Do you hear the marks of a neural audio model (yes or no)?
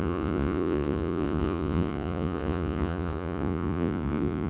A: yes